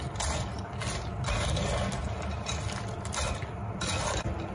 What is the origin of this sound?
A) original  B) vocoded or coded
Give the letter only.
A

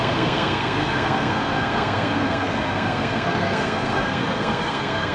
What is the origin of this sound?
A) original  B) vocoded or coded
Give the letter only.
B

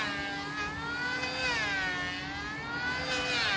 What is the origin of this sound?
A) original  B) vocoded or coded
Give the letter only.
A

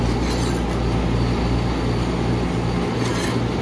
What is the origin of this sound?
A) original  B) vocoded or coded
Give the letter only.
A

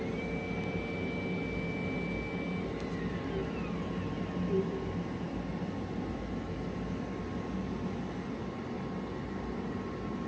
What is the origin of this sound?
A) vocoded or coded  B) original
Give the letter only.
B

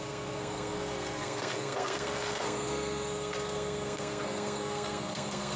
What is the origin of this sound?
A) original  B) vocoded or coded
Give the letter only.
B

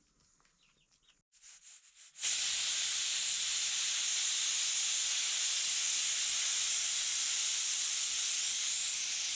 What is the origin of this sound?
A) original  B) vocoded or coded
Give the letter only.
A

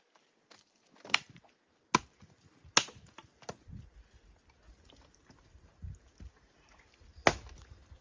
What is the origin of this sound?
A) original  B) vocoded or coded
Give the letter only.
A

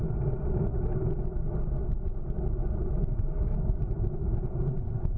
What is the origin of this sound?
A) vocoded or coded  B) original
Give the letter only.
B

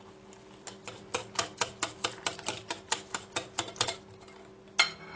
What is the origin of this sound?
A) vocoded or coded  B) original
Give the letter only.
B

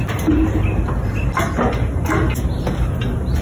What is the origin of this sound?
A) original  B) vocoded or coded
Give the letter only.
A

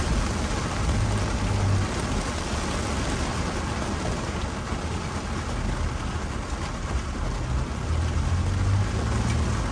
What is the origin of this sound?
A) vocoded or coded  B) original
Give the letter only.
B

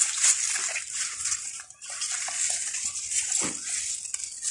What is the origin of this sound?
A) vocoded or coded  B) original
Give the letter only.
B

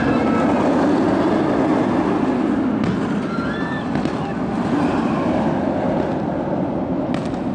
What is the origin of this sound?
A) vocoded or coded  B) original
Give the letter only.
B